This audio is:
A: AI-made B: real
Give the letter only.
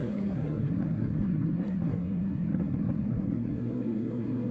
A